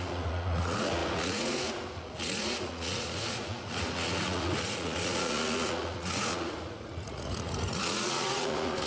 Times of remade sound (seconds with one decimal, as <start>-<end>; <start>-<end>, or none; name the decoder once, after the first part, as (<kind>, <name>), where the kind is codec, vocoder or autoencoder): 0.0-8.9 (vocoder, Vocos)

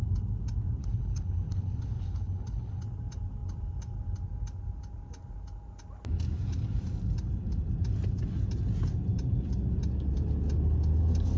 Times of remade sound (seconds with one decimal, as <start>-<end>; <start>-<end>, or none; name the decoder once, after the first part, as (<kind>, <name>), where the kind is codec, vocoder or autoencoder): 0.8-2.8 (codec, HILCodec)

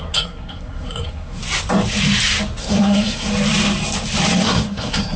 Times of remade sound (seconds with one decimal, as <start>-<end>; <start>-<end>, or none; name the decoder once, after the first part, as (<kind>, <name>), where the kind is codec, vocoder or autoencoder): 0.0-1.4 (codec, SNAC); 2.6-3.3; 4.4-5.2

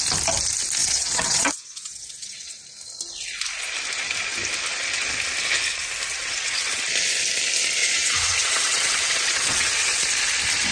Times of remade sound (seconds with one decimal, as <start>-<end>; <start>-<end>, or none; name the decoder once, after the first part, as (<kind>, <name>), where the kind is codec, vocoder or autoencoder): 0.8-2.6 (vocoder, WaveNeXt); 6.1-6.8; 7.8-10.1